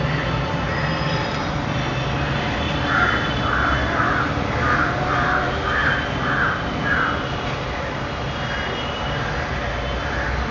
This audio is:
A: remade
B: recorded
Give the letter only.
B